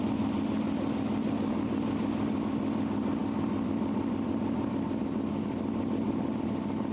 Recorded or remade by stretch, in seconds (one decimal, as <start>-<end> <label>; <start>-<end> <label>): 0.0-6.9 recorded